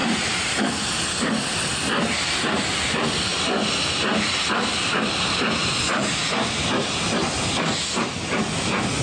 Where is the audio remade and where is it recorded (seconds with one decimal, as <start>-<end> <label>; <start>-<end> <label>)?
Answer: 0.0-0.6 remade; 0.6-9.0 recorded